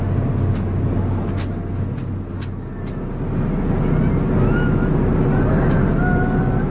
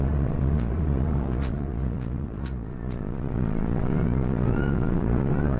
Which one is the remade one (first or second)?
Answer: second